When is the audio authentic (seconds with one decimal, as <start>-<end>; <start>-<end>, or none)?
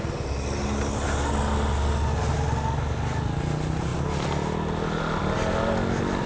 0.0-6.3